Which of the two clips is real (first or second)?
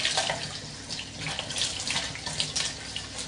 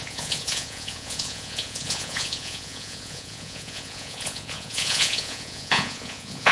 first